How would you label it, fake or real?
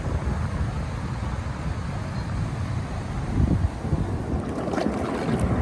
real